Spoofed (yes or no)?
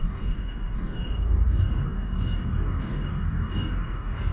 yes